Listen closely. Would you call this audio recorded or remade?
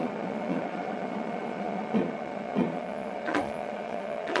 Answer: remade